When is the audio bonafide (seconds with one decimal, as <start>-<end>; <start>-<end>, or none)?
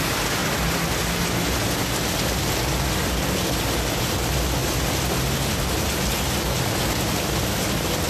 0.0-8.1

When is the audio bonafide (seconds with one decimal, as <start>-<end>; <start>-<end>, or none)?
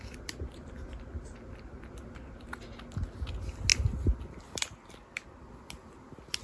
0.0-6.4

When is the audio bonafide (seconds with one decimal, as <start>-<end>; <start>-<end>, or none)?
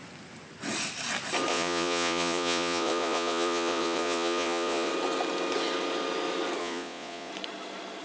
0.0-1.5; 4.9-6.6; 7.3-8.0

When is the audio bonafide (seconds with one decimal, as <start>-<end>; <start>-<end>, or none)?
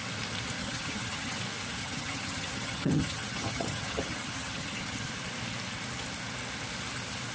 0.0-0.6; 1.4-1.8; 5.1-7.3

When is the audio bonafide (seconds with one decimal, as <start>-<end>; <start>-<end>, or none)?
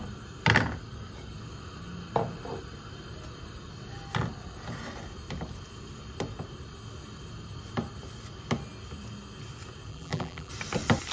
0.0-9.9; 10.5-11.1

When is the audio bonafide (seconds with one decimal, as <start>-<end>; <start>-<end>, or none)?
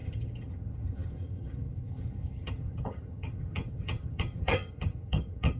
none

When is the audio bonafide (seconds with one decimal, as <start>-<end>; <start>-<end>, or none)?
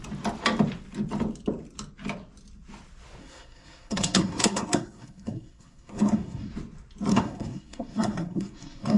0.0-3.2; 6.5-7.1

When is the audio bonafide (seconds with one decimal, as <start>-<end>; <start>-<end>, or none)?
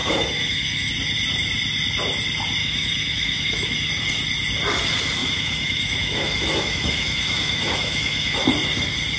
0.9-2.6; 3.9-5.2; 8.4-9.2